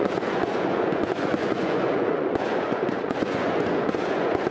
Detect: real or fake fake